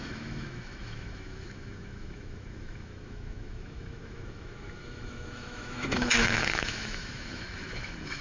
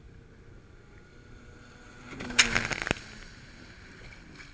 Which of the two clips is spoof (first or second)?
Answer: first